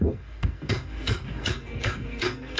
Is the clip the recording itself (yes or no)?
no